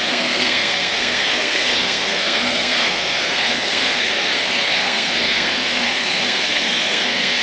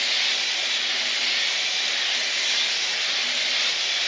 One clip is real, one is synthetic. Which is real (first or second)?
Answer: second